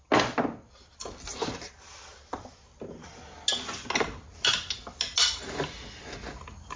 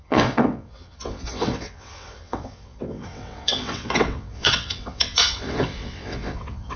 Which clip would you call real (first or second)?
first